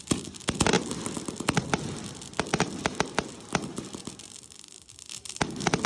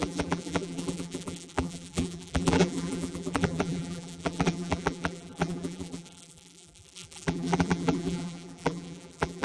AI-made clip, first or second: second